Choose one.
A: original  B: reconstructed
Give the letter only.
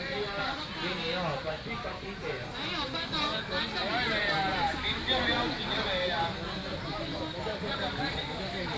A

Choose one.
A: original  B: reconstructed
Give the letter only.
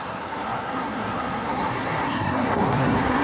B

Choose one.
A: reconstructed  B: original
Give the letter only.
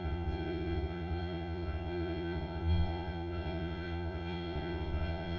A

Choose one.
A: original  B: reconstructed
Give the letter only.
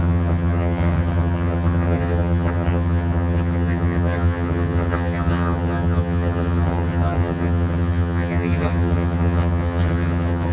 B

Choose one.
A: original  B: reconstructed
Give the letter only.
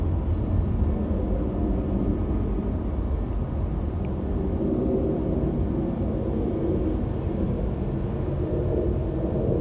A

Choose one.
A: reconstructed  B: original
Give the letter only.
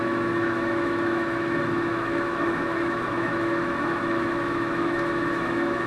A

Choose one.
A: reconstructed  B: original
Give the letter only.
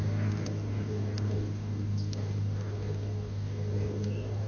A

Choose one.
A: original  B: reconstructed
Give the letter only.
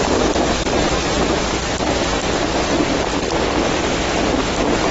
A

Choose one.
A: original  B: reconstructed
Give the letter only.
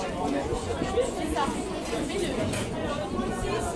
B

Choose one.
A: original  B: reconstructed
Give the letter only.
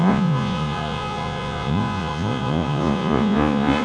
B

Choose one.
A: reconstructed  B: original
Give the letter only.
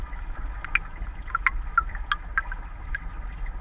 B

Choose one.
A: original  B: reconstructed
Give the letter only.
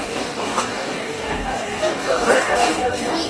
B